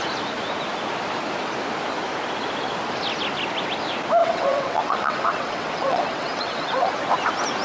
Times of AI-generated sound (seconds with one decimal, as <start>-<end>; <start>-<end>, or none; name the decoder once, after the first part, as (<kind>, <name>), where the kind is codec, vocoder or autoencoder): 4.2-6.9 (vocoder, WaveNeXt)